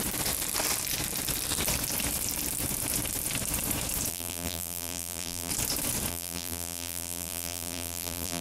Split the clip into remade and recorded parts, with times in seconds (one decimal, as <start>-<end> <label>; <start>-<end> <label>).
0.0-4.1 recorded; 4.1-5.5 remade; 5.5-6.1 recorded; 6.1-8.4 remade